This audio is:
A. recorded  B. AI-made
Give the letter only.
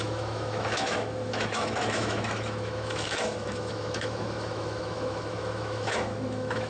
B